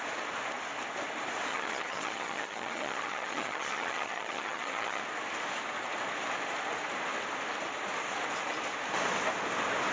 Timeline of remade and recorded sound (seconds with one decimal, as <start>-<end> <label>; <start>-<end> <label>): 0.0-1.5 recorded; 1.5-5.0 remade; 5.0-9.9 recorded